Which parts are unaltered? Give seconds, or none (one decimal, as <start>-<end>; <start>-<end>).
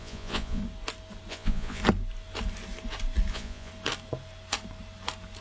0.6-1.3; 1.8-3.3; 3.7-5.4